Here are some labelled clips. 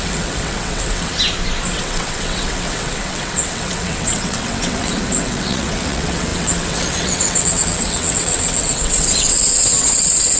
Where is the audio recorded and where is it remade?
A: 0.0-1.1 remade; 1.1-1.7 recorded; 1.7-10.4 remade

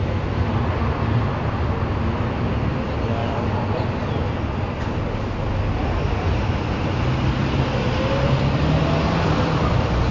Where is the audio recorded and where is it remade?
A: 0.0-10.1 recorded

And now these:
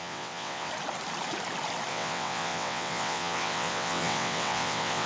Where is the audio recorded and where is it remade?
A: 0.0-0.7 remade; 0.7-1.9 recorded; 1.9-5.1 remade

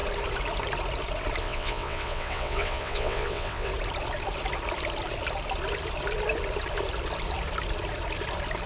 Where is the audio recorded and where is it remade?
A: 0.0-1.4 recorded; 1.4-3.7 remade; 3.7-8.7 recorded